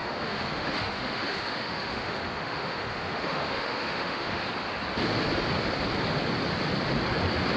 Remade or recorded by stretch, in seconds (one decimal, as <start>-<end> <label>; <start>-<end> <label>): 0.0-4.4 remade; 4.4-7.6 recorded